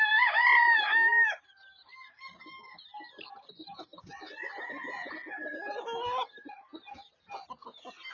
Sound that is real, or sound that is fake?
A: real